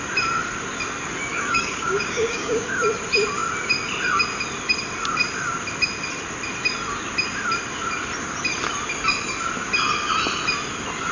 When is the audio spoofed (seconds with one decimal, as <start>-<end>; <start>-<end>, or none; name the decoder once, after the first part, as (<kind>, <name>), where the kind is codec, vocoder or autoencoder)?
1.3-2.7 (codec, DAC)